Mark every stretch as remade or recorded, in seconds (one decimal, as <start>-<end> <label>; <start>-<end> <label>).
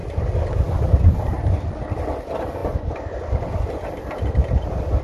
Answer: 0.0-2.6 recorded; 2.6-5.0 remade